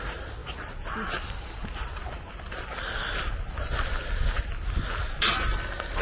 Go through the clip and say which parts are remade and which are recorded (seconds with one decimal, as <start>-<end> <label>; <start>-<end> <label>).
0.0-6.0 recorded